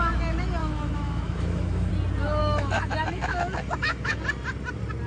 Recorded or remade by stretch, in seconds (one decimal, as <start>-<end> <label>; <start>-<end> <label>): 0.0-0.6 recorded; 0.6-1.9 remade; 1.9-2.4 recorded; 2.4-4.2 remade; 4.2-5.1 recorded